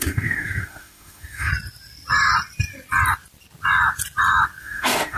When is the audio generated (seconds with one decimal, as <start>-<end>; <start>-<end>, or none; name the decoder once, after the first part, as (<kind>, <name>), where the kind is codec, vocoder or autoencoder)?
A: 0.0-1.5 (autoencoder, DAC-VAE); 4.6-5.2